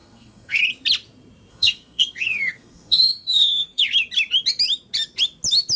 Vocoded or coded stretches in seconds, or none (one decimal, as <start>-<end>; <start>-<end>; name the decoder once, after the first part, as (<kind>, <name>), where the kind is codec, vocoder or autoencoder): 0.0-0.6 (codec, SNAC); 1.5-3.8